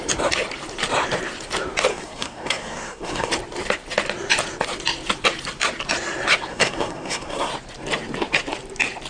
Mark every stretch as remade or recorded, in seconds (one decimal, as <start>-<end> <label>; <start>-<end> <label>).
0.0-1.9 recorded; 1.9-3.3 remade; 3.3-6.5 recorded; 6.5-7.5 remade; 7.5-9.1 recorded